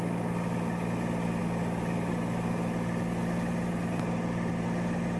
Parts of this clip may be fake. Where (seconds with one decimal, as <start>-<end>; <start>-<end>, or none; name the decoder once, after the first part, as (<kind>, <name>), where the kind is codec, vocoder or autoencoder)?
none